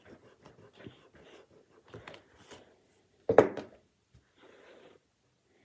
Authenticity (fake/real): real